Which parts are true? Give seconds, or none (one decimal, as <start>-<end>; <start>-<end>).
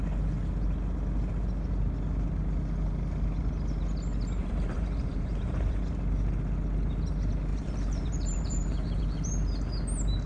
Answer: 0.0-4.4; 5.8-7.5; 9.0-10.3